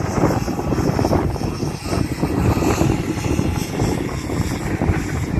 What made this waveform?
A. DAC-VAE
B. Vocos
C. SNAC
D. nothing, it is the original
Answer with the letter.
D